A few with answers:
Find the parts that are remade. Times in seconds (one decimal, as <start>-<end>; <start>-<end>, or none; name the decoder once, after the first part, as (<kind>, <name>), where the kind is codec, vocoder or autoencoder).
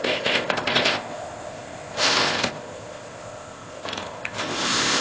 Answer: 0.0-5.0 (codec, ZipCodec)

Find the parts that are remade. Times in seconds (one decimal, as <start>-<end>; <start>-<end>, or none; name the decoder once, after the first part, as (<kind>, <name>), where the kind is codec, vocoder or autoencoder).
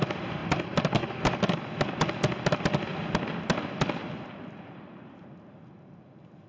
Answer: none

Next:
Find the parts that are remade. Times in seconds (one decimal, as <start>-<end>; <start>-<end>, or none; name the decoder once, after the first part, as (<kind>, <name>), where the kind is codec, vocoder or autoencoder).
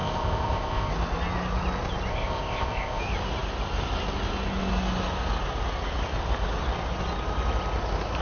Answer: 0.0-0.9 (codec, ZipCodec); 2.1-3.0